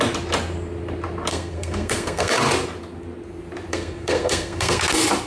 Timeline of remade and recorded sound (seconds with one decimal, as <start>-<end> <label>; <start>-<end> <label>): 0.0-1.3 recorded; 1.3-2.3 remade; 2.3-3.7 recorded; 3.7-4.8 remade; 4.8-5.3 recorded